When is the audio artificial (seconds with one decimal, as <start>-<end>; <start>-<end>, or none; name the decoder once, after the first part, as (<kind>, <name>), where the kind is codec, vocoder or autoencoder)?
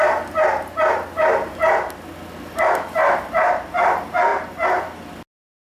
none